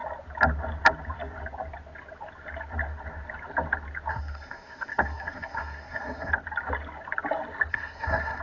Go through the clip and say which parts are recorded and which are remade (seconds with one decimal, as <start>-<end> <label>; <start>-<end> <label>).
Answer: 0.0-4.1 recorded; 4.1-6.3 remade; 6.3-7.7 recorded; 7.7-8.4 remade